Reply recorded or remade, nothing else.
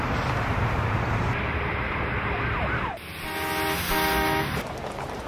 recorded